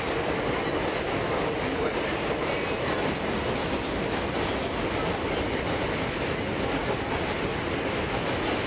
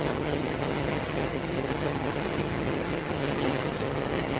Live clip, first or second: first